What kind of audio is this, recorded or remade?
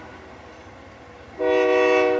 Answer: recorded